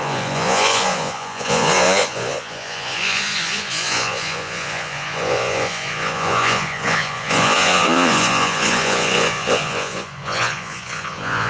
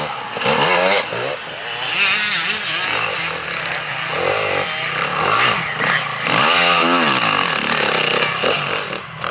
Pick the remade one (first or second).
first